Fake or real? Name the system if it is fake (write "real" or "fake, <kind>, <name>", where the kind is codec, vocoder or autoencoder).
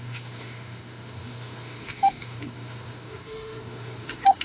fake, autoencoder, DAC-VAE